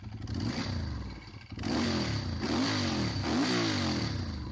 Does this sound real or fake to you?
real